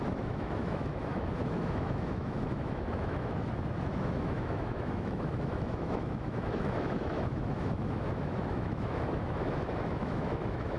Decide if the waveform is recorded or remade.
remade